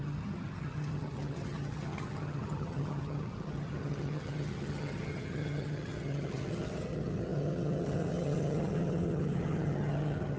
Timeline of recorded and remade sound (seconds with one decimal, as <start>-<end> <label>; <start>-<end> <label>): 0.0-10.4 remade